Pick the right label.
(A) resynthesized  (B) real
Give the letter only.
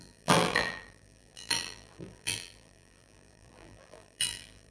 A